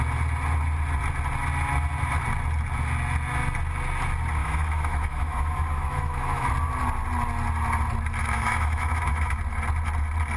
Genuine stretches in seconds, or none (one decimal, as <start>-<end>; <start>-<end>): 0.0-4.4; 6.5-8.2; 9.4-10.4